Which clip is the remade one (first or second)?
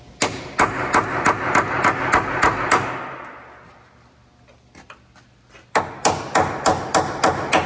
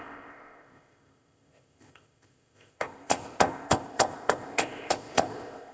second